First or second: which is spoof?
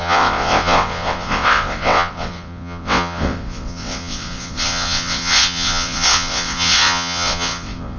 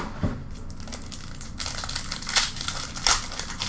first